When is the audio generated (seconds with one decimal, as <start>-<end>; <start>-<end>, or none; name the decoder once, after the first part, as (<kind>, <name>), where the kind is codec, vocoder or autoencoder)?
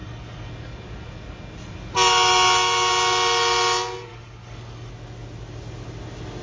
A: 0.0-0.5 (codec, DAC); 4.1-4.9